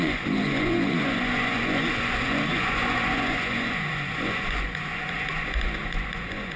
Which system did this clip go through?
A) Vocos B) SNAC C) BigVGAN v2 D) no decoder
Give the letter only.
A